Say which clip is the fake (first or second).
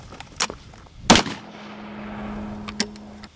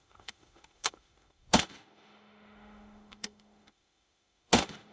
second